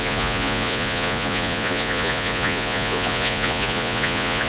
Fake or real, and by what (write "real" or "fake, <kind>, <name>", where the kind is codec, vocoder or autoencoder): fake, vocoder, Vocos